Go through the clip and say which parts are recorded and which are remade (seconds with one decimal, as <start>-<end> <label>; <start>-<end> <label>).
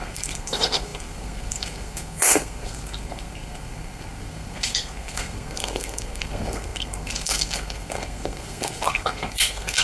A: 0.0-9.8 remade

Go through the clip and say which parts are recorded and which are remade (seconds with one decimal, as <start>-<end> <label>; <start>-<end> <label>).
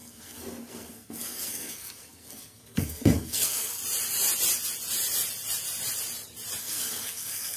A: 0.0-3.8 remade; 3.8-6.6 recorded; 6.6-7.6 remade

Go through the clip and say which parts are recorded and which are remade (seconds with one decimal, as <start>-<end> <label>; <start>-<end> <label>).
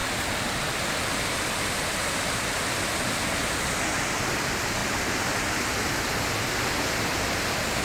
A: 0.0-7.8 recorded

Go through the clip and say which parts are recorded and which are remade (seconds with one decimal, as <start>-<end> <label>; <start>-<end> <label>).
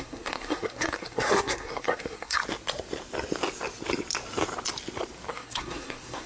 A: 0.0-2.4 remade; 2.4-5.3 recorded; 5.3-6.3 remade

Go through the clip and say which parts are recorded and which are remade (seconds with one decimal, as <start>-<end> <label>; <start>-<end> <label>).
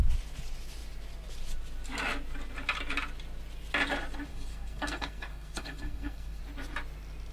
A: 0.0-4.3 recorded; 4.3-6.4 remade; 6.4-7.3 recorded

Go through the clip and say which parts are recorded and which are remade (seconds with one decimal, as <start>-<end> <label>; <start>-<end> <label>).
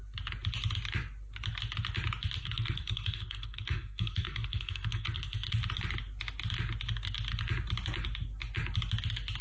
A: 0.0-2.4 recorded; 2.4-5.5 remade; 5.5-9.4 recorded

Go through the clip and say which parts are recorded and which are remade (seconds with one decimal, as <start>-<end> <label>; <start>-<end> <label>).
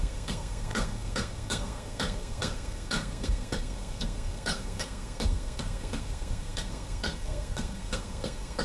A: 0.0-8.6 remade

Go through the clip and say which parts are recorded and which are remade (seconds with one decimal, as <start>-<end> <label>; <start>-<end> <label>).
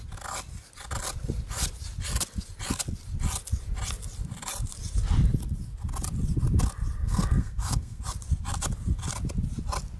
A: 0.0-7.0 recorded; 7.0-8.0 remade; 8.0-10.0 recorded